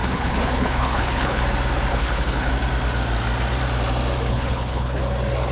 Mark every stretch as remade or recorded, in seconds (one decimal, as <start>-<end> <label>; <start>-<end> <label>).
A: 0.0-1.4 remade; 1.4-1.9 recorded; 1.9-2.5 remade; 2.5-4.3 recorded; 4.3-5.0 remade; 5.0-5.5 recorded